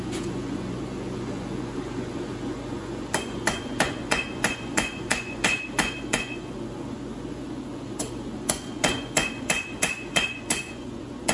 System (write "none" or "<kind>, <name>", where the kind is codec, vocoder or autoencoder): vocoder, Vocos